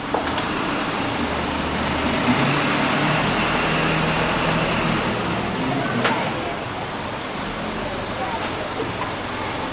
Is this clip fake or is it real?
real